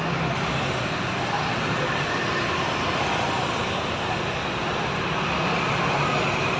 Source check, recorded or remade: recorded